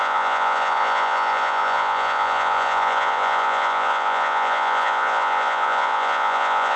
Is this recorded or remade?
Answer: remade